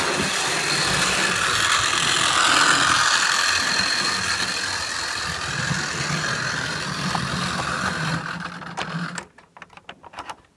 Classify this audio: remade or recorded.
recorded